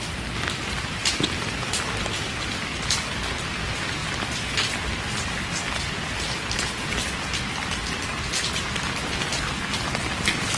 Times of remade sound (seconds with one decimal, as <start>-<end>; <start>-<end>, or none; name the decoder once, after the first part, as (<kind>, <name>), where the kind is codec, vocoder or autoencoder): none